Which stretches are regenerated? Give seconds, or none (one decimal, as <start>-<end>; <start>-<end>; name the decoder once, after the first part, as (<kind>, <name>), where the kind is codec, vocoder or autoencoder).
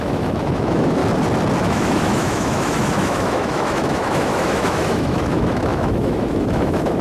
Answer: 0.0-1.0 (autoencoder, DAC-VAE); 1.6-7.0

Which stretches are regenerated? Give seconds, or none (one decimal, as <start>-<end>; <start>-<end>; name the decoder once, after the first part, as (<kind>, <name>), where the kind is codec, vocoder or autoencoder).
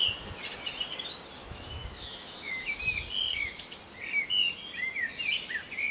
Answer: 1.4-2.8 (autoencoder, DAC-VAE); 3.3-3.8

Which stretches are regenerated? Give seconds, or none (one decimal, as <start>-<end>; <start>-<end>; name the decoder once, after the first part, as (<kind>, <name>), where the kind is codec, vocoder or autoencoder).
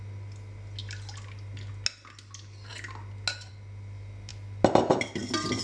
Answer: none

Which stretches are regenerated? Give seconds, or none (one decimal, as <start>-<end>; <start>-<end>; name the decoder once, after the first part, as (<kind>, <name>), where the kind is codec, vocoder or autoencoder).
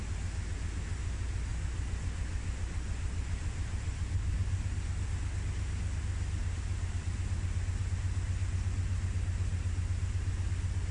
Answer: 6.4-7.8 (vocoder, BigVGAN v2); 9.5-10.3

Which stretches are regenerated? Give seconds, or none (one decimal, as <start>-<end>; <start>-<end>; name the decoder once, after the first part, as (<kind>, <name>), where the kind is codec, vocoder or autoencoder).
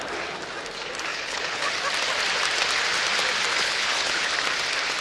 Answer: 1.1-1.7 (codec, HILCodec); 3.5-4.3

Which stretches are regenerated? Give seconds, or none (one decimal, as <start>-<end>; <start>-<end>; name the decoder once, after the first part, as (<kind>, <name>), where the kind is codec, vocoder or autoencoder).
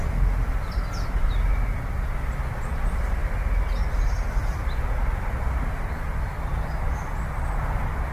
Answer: none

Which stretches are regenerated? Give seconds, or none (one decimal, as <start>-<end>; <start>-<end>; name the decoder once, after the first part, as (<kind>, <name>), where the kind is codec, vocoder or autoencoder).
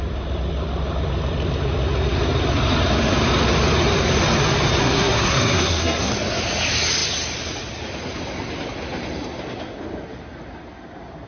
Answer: 4.8-6.1 (codec, SNAC)